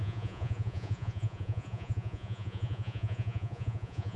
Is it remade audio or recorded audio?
remade